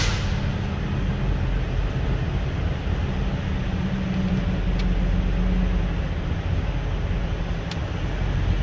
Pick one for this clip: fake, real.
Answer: real